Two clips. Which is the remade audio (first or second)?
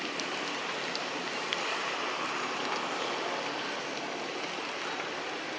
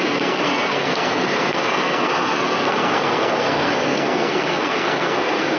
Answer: second